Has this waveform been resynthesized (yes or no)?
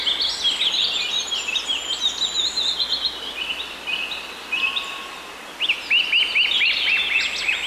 no